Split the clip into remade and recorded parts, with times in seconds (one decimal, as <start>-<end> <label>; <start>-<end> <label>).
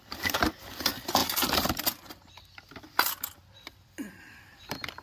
0.0-1.2 remade; 1.2-4.2 recorded; 4.2-5.0 remade